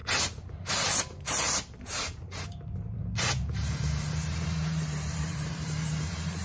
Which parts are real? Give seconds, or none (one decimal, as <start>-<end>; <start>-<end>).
none